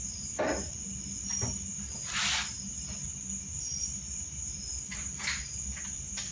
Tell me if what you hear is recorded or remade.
recorded